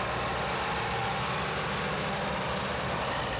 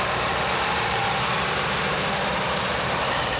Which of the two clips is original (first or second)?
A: first